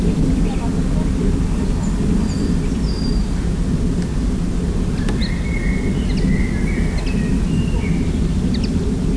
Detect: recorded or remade recorded